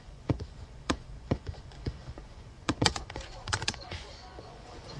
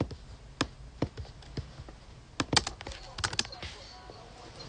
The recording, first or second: second